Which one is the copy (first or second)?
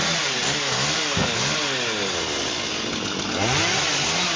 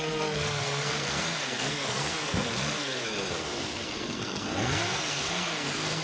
second